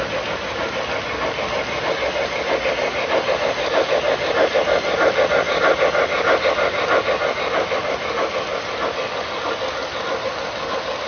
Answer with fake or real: real